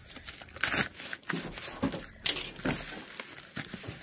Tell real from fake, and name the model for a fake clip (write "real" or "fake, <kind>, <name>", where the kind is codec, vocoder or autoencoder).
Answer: real